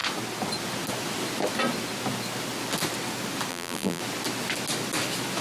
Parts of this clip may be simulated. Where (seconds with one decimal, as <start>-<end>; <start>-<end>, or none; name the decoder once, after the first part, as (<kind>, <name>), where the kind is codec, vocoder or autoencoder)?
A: 3.5-4.0 (vocoder, BigVGAN v2)